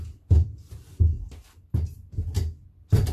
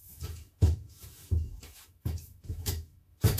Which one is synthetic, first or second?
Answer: second